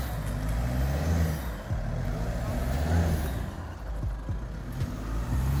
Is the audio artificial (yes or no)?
no